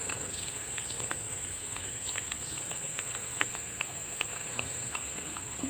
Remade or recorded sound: remade